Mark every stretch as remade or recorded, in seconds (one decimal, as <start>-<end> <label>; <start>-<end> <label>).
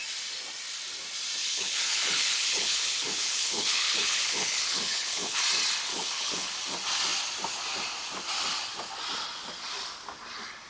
0.0-1.4 recorded; 1.4-5.4 remade; 5.4-5.9 recorded; 5.9-6.5 remade; 6.5-10.7 recorded